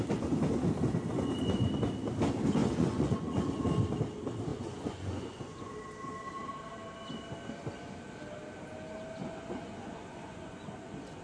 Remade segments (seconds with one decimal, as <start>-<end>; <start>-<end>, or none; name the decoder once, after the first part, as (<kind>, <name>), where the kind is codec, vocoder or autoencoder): 2.6-3.6 (vocoder, Vocos); 4.5-5.7; 9.2-11.2